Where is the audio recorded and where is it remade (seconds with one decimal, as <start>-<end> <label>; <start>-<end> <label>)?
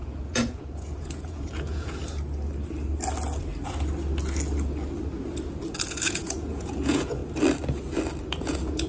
0.0-2.0 remade; 2.0-5.9 recorded; 5.9-7.2 remade; 7.2-8.4 recorded; 8.4-8.9 remade